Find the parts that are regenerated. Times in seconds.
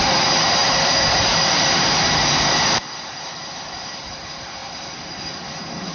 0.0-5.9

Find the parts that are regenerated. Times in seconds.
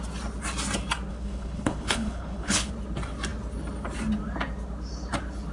1.1-2.7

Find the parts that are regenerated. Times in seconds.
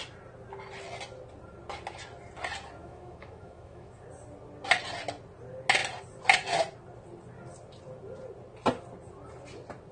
2.8-4.0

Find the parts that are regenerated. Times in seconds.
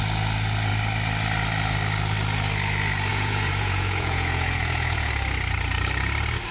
3.1-5.1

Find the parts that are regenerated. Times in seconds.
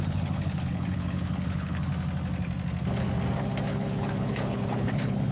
0.0-1.9; 3.7-5.3